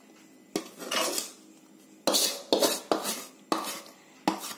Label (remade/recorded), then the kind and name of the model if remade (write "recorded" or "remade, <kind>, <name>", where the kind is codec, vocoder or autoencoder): recorded